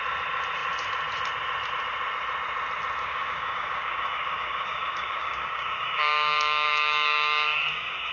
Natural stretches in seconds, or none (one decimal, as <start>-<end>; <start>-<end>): 0.0-3.0